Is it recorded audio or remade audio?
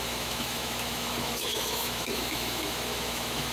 remade